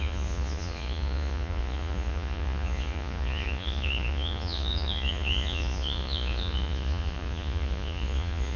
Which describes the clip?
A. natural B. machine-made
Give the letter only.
B